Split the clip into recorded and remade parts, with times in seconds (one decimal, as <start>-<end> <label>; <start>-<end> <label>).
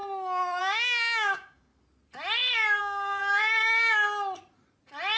0.0-0.6 recorded; 0.6-1.7 remade; 1.7-2.8 recorded; 2.8-3.2 remade; 3.2-5.2 recorded